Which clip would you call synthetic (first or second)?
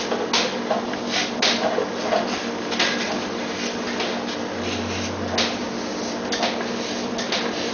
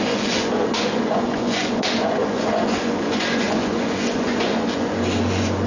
second